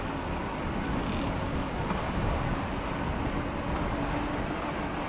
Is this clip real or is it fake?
real